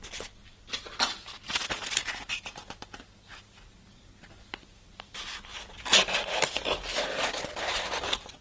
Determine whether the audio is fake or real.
real